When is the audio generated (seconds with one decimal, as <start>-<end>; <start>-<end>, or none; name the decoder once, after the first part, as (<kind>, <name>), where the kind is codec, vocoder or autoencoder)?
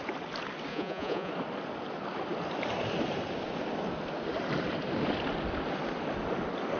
0.7-1.3 (vocoder, Vocos)